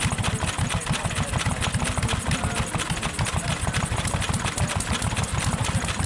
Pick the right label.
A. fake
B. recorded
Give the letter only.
B